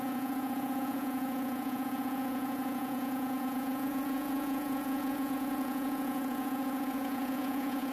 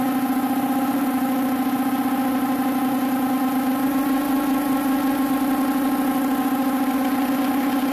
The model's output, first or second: first